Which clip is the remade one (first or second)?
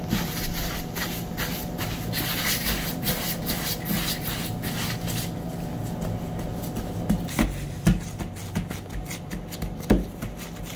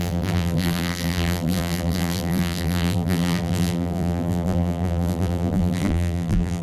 second